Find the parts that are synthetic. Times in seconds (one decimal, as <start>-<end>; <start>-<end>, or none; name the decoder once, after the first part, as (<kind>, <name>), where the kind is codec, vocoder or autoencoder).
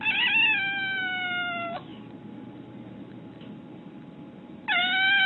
none